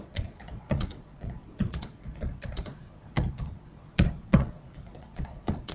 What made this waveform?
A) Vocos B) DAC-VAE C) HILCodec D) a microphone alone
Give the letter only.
A